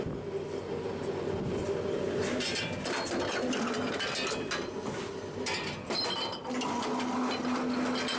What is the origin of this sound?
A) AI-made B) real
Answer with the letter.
B